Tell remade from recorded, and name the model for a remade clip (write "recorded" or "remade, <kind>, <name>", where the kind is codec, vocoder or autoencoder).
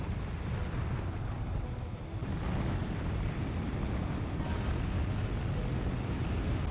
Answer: recorded